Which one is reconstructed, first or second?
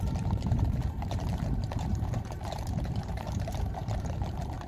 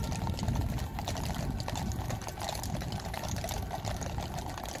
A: first